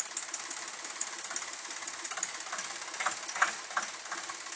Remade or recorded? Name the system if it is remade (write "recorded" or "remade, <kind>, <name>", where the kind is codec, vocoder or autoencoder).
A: recorded